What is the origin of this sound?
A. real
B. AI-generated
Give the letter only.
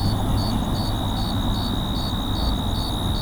A